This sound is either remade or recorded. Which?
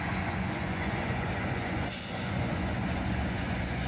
remade